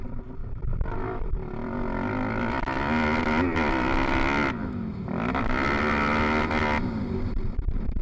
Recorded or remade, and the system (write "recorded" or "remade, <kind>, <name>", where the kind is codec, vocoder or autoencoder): recorded